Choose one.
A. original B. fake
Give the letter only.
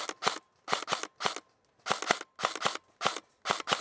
A